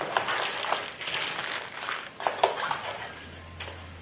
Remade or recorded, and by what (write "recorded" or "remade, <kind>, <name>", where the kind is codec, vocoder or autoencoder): recorded